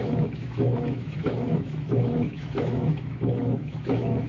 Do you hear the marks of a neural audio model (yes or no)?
yes